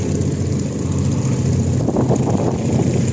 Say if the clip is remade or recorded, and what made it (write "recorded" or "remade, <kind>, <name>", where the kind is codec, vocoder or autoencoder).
recorded